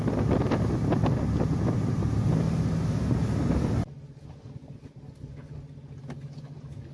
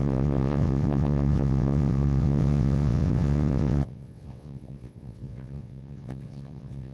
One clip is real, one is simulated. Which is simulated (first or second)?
second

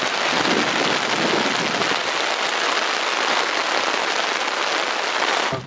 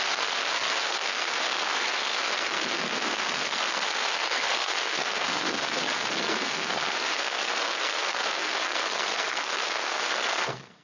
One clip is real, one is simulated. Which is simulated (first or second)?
second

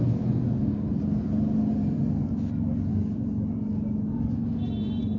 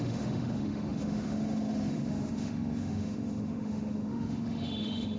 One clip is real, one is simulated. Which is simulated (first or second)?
second